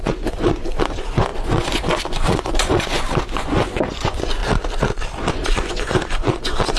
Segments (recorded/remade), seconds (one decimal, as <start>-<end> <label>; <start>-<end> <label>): 0.0-4.4 remade; 4.4-5.3 recorded; 5.3-6.8 remade